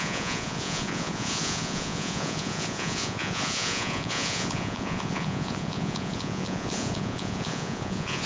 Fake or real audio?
fake